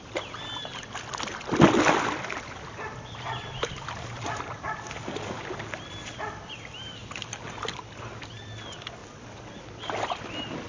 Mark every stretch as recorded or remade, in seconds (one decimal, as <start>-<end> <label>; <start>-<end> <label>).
0.0-9.0 recorded; 9.0-9.6 remade; 9.6-10.7 recorded